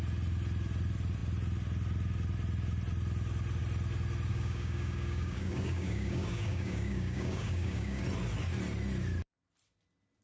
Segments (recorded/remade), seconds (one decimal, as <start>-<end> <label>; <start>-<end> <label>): 0.0-4.3 recorded; 4.3-8.0 remade; 8.0-10.2 recorded